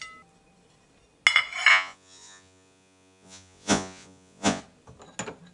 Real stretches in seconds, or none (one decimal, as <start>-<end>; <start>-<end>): 0.0-1.7; 4.6-5.5